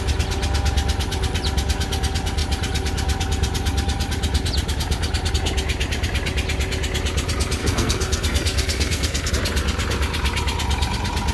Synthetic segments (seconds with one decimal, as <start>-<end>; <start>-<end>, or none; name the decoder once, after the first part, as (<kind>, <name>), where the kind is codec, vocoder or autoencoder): 7.6-9.3 (codec, SNAC)